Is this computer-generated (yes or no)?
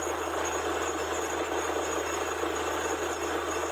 no